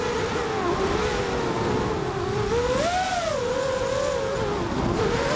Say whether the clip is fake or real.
real